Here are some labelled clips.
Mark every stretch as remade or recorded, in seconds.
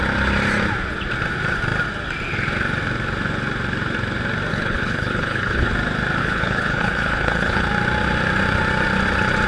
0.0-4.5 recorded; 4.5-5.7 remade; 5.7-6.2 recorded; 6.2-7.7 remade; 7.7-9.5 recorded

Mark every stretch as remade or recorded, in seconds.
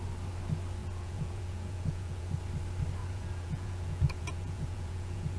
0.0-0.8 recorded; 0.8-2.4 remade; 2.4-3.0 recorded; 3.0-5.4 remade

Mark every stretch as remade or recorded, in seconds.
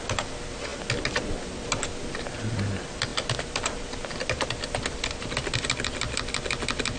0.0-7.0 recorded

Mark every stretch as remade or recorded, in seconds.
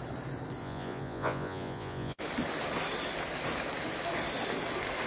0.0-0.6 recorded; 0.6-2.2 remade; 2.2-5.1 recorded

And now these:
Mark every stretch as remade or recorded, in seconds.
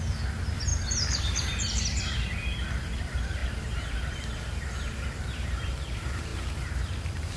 0.0-3.4 remade; 3.4-4.1 recorded; 4.1-7.4 remade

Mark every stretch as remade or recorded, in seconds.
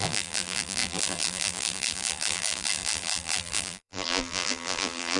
0.0-5.2 remade